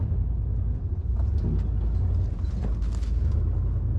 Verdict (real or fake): real